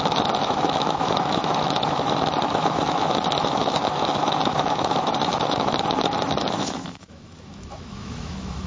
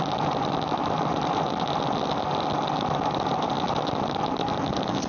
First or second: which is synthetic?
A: first